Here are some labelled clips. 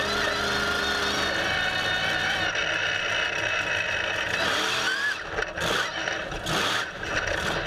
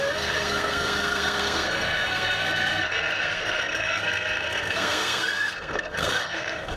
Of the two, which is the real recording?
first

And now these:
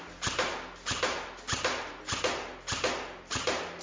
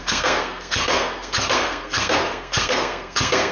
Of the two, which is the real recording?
first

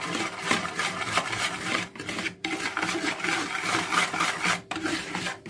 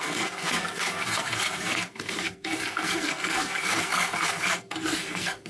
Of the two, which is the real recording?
first